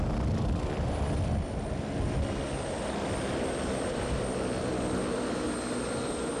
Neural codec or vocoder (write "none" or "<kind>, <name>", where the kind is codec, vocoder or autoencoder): none